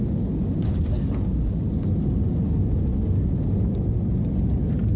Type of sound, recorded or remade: recorded